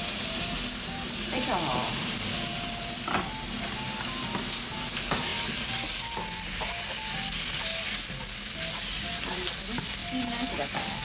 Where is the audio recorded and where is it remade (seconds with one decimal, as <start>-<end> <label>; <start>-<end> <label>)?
0.0-11.0 recorded